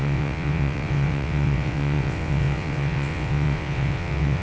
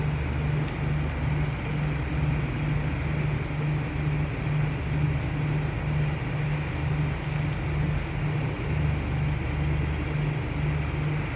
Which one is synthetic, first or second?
first